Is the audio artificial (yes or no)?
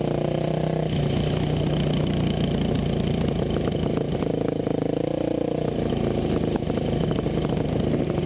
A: no